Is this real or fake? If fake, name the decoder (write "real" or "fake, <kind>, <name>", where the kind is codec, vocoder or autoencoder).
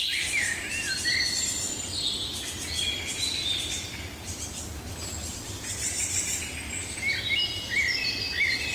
real